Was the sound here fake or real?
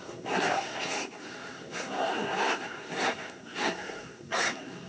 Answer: fake